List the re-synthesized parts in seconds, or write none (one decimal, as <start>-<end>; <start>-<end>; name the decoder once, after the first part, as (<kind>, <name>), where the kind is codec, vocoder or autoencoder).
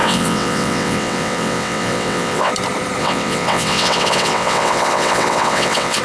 0.0-2.5 (vocoder, WaveNeXt); 3.0-6.0